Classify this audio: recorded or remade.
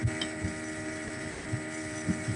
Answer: remade